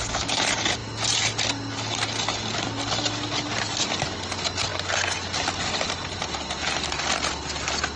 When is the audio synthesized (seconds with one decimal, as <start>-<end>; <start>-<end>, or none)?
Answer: none